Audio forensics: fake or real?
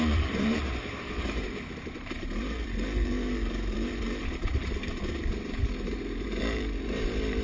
fake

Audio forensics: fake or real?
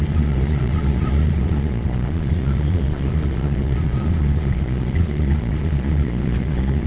fake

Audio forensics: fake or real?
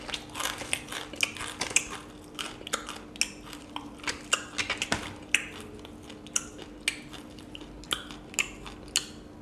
real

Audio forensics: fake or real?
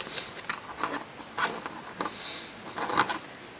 real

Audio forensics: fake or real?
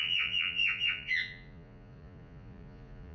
fake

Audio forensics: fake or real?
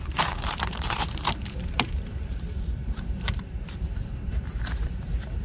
fake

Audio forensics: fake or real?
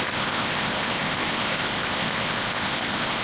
fake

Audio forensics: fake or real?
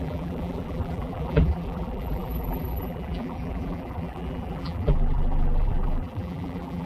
fake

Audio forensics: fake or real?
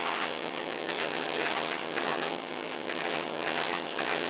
fake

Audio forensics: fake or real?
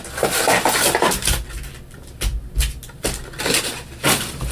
real